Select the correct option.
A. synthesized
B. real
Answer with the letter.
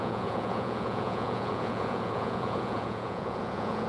A